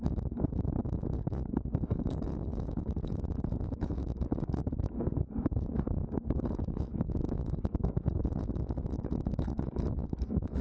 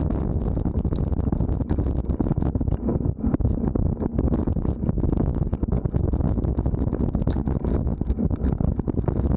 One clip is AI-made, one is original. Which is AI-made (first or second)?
first